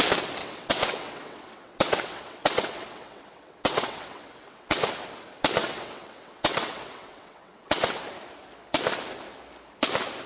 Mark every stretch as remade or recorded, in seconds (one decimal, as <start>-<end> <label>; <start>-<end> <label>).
0.0-0.4 recorded; 0.4-4.9 remade; 4.9-5.6 recorded; 5.6-8.0 remade; 8.0-10.3 recorded